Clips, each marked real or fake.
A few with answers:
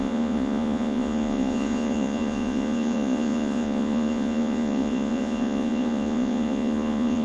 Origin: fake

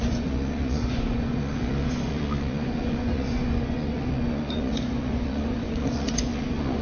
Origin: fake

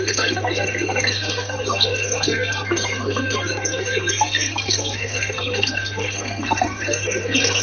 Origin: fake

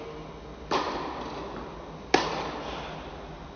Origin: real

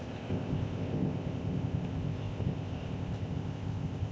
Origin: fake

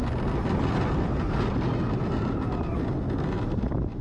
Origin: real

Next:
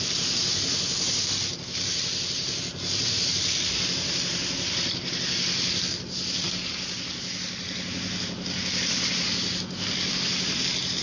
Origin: real